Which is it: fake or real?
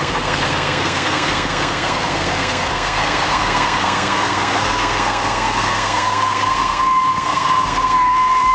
fake